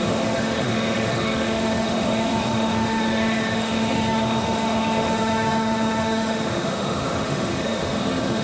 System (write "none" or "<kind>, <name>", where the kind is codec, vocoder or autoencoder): autoencoder, DAC-VAE